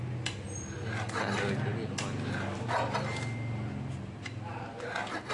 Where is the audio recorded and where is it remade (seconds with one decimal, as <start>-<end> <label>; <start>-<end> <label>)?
0.0-5.3 recorded